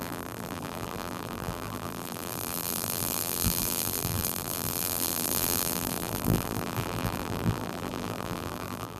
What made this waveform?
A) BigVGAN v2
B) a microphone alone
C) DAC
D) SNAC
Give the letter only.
A